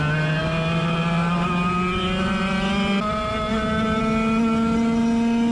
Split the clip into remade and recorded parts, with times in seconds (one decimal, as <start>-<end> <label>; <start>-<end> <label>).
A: 0.0-5.5 recorded